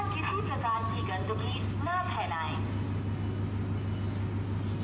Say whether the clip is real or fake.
real